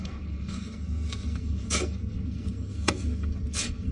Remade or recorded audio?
remade